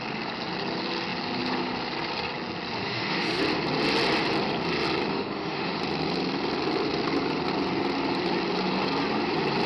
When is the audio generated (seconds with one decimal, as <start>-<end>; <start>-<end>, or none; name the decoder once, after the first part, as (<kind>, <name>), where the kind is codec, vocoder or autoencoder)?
2.8-3.4 (autoencoder, DAC-VAE); 5.1-5.8

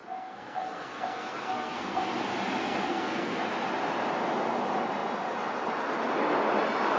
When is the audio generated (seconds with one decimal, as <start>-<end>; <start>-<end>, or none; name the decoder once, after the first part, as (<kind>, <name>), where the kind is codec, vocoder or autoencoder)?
0.0-2.1 (codec, SNAC); 2.6-3.4